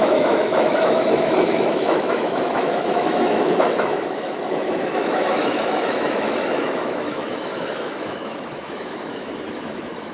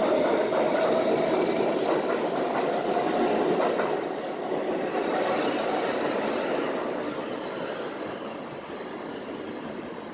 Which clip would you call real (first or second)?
second